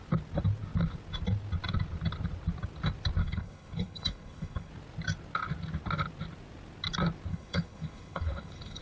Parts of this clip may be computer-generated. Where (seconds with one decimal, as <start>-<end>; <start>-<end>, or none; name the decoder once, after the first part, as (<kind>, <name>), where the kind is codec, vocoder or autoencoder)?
3.2-4.7 (codec, HILCodec); 7.3-8.8